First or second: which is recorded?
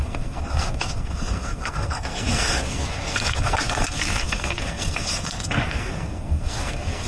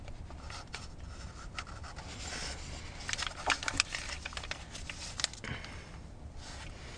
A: second